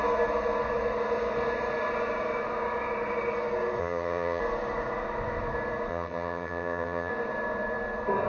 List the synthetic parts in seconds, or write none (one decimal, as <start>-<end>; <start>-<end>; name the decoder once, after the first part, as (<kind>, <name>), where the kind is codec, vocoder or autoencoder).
3.8-4.4 (vocoder, HiFi-GAN); 5.9-7.1